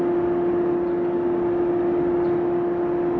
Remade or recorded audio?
recorded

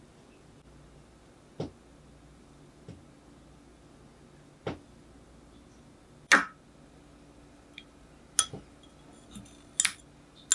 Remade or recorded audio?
recorded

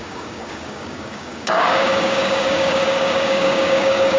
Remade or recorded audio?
remade